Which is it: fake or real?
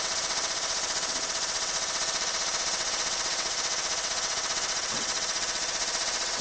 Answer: fake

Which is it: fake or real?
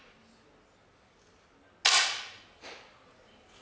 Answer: real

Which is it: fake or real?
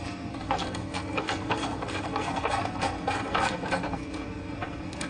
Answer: fake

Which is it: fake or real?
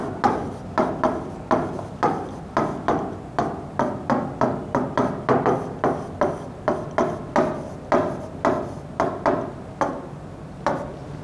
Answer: real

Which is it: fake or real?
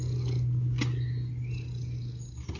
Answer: real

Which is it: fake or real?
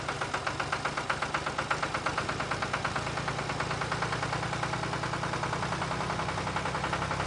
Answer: real